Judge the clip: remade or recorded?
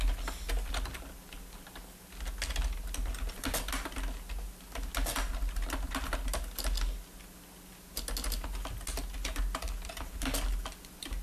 recorded